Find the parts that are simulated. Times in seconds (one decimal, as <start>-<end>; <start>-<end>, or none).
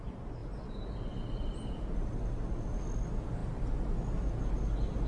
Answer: none